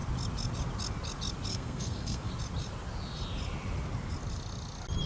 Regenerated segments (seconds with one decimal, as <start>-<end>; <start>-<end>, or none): 1.5-2.3